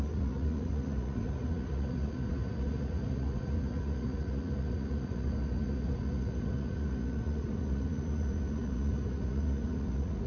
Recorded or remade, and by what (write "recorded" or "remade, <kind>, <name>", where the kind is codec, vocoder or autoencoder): remade, vocoder, Vocos